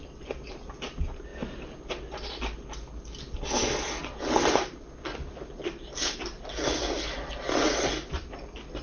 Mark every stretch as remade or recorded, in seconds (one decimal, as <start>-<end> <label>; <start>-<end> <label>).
0.0-8.8 recorded